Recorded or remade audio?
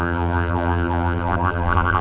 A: remade